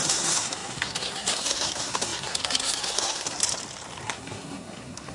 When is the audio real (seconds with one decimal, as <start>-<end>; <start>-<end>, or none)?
3.4-4.0